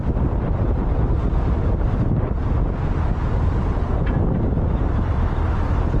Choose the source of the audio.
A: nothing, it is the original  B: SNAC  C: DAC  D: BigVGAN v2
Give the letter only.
A